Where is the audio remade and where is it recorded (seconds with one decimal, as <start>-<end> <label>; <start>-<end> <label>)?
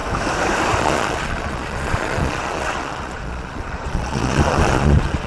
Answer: 0.0-0.8 recorded; 0.8-5.3 remade